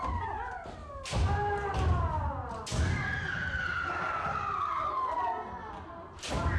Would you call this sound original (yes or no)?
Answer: yes